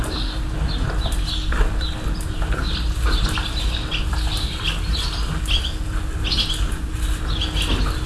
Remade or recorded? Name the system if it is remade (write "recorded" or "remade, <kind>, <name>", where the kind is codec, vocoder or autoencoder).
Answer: recorded